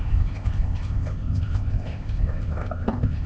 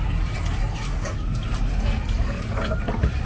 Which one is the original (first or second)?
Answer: second